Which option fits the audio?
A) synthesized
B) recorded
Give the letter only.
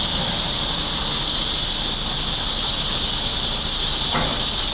B